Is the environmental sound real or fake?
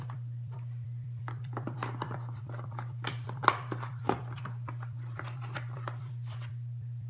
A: fake